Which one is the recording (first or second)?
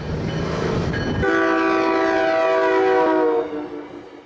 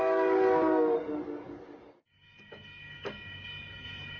first